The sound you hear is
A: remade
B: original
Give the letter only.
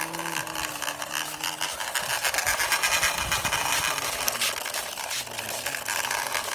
B